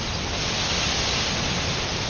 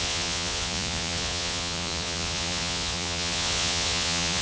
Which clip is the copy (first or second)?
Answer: second